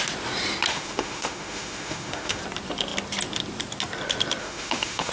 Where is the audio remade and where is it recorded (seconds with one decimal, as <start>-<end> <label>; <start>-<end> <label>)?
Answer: 0.0-0.7 recorded; 0.7-2.4 remade; 2.4-4.4 recorded; 4.4-5.1 remade